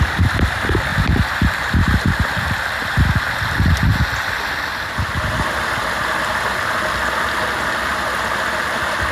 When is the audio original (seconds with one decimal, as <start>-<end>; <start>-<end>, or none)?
0.0-9.1